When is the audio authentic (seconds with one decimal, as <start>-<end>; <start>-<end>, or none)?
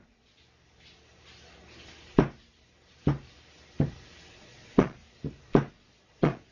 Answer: 0.4-4.3; 5.0-5.7